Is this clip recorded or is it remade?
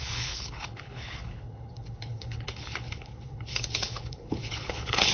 remade